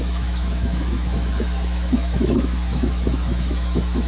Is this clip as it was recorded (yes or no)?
no